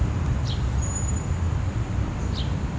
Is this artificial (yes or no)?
yes